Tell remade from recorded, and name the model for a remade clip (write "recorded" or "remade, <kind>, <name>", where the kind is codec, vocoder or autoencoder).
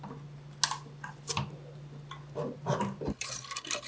recorded